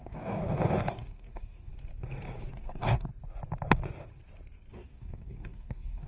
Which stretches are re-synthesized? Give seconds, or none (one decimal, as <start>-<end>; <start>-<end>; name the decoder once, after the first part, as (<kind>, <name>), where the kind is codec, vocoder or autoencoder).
0.0-0.4 (codec, DAC); 0.9-1.7; 2.5-3.1; 4.7-6.1